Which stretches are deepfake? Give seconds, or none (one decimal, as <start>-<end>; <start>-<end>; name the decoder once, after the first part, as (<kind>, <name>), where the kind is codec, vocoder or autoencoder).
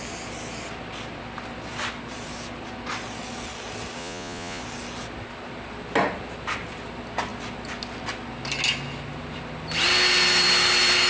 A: 4.0-4.6 (vocoder, Vocos)